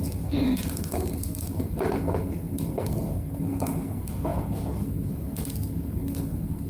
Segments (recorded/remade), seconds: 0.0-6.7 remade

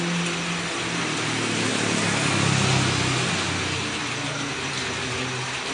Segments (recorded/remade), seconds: 0.0-5.7 recorded